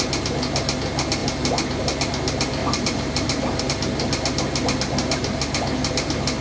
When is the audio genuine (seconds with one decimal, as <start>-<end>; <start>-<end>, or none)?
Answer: 0.0-2.6; 3.6-6.4